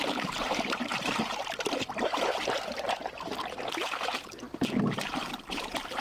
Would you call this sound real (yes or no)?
no